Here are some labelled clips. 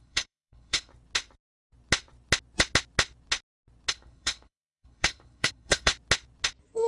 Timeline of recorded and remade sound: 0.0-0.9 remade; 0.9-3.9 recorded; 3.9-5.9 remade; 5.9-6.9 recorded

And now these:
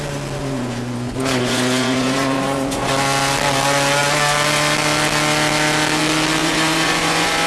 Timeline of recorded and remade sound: 0.0-0.4 recorded; 0.4-2.9 remade; 2.9-6.4 recorded; 6.4-7.5 remade

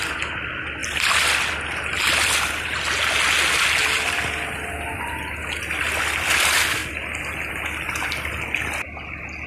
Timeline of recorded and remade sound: 0.0-9.5 recorded

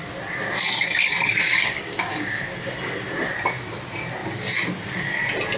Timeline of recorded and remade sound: 0.0-1.4 recorded; 1.4-2.4 remade; 2.4-5.6 recorded

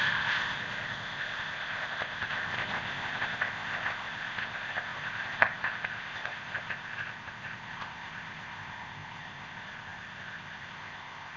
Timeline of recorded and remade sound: 0.0-11.4 remade